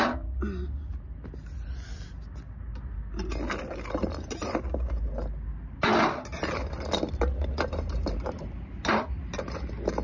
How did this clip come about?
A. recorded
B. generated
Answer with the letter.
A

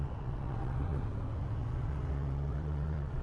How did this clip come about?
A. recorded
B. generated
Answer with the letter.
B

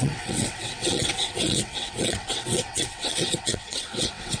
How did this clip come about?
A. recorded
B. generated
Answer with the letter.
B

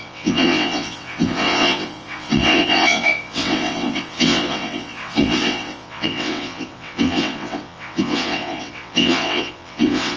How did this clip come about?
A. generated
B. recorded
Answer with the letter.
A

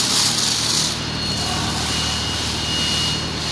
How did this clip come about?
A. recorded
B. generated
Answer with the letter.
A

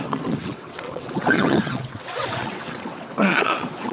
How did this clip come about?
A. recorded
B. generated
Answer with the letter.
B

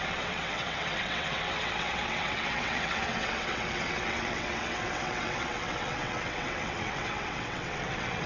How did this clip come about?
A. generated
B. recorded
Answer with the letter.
A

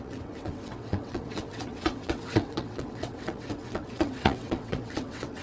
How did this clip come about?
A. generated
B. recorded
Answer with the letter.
A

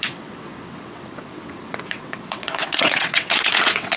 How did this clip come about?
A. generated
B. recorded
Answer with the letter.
A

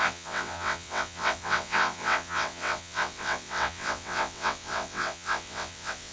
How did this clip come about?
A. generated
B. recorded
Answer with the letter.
A